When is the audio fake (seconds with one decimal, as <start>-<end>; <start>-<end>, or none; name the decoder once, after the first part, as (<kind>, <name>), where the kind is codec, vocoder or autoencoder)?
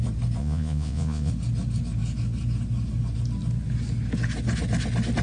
0.4-1.3 (vocoder, Vocos)